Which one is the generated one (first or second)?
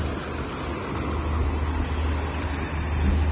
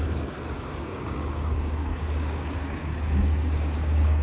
second